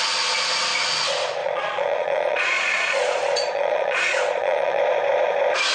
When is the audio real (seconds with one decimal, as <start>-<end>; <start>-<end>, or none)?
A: 0.0-1.4; 4.8-5.7